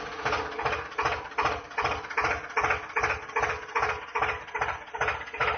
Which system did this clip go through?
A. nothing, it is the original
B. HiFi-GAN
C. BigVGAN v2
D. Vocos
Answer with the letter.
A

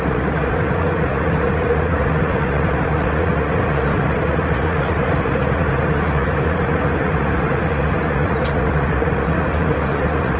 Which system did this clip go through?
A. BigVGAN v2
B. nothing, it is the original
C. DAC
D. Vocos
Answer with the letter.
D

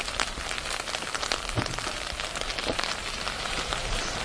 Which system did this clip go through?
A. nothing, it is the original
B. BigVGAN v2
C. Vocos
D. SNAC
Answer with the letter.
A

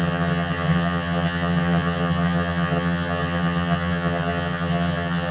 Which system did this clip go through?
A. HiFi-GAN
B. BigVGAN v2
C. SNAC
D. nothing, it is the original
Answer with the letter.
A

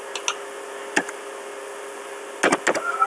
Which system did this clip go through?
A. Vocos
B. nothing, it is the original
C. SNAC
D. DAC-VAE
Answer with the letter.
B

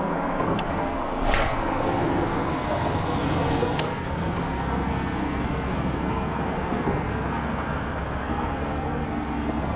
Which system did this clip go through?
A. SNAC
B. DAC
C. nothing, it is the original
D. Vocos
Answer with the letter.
A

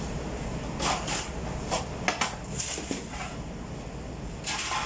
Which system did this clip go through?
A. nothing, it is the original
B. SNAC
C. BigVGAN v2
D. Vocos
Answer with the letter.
A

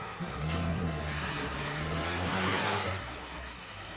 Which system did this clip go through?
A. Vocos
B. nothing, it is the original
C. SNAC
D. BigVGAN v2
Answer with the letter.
C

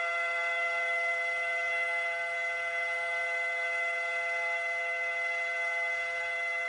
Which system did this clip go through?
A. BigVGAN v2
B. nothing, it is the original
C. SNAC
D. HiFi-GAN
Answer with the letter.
C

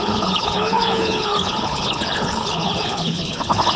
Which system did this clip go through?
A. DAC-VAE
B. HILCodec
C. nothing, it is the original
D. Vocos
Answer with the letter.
B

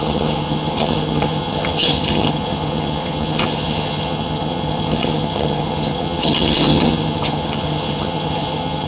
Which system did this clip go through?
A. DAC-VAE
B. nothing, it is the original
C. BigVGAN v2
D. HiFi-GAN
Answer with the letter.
D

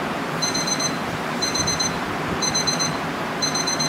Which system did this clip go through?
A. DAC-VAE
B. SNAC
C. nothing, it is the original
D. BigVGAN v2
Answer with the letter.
D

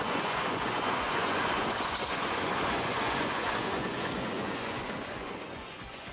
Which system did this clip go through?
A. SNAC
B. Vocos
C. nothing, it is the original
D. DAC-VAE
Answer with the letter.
B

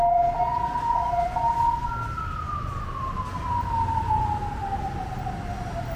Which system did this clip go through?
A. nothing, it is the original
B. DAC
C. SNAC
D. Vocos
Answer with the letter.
A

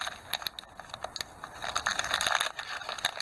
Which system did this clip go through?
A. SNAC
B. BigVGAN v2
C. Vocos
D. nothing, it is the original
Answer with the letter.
D